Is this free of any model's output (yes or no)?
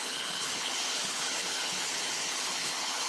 no